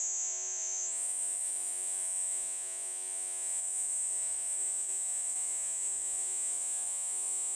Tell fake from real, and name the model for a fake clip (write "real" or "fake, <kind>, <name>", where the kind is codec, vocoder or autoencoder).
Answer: fake, vocoder, Vocos